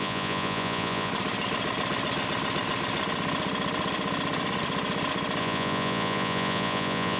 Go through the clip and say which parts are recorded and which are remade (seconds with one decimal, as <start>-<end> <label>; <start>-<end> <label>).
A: 0.0-1.1 remade; 1.1-5.4 recorded; 5.4-7.2 remade